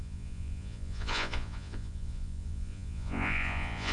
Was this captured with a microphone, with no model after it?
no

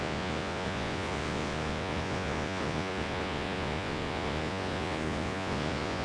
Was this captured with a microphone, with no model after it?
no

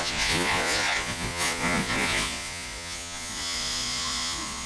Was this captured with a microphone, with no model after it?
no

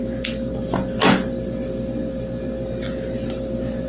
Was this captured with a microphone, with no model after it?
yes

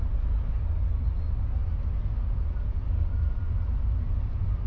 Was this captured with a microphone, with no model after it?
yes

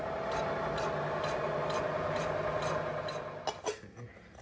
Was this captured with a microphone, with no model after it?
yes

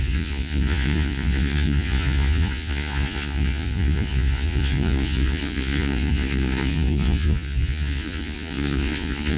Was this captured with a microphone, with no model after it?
no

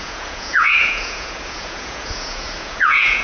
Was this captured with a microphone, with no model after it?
no